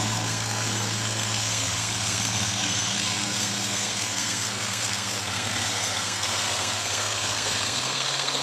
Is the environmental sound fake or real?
fake